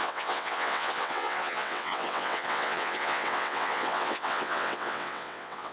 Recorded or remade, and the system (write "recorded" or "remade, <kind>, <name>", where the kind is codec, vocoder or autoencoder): remade, vocoder, WaveNeXt